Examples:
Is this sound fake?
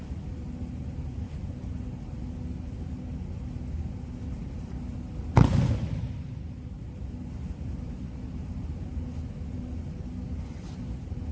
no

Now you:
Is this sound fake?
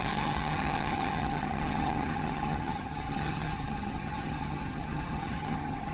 yes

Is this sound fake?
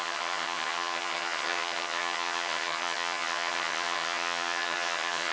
yes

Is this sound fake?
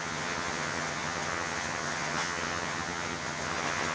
yes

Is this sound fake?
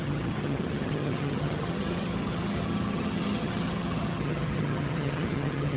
yes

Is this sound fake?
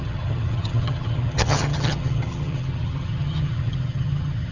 yes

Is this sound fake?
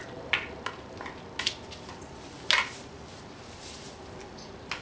no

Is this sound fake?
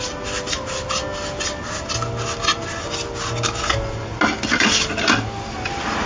no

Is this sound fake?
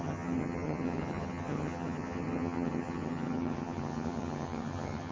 yes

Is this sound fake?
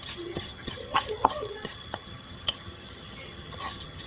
yes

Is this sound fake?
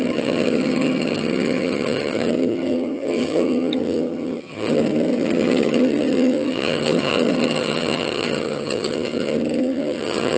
yes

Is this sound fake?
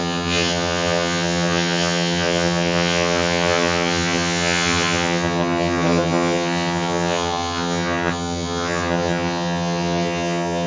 yes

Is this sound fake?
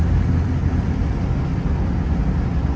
no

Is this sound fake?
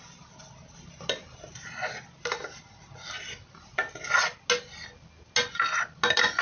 no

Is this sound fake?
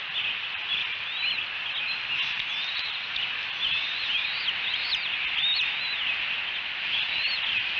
no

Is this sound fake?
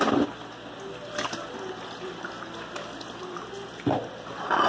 no